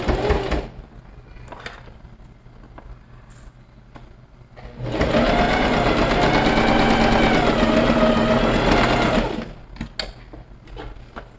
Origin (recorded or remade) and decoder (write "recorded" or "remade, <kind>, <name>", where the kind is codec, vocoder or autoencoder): recorded